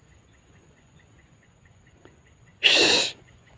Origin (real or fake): fake